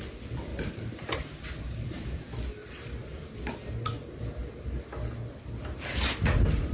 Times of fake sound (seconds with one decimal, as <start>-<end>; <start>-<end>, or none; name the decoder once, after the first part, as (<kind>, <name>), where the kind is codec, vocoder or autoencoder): 0.0-3.0 (vocoder, BigVGAN v2); 3.6-4.4